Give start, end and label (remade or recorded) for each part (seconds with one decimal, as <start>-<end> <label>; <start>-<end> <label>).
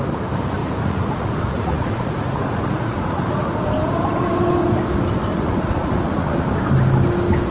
0.0-0.6 recorded; 0.6-3.5 remade; 3.5-5.3 recorded; 5.3-6.5 remade; 6.5-7.5 recorded